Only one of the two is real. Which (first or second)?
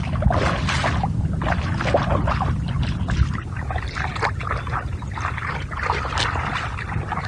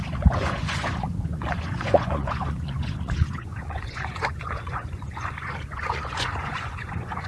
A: first